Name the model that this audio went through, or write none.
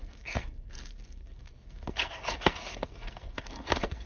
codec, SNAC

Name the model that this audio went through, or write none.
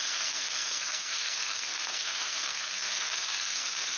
codec, SNAC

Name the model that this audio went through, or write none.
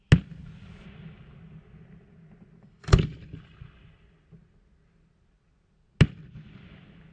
none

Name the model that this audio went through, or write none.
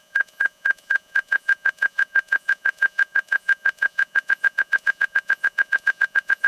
vocoder, Vocos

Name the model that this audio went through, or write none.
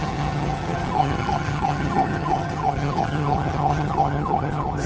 vocoder, HiFi-GAN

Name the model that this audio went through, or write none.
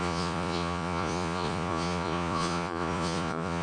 vocoder, Vocos